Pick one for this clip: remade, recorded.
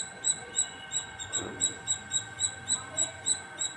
remade